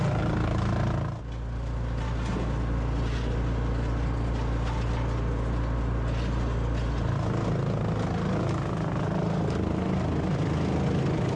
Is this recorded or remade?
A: recorded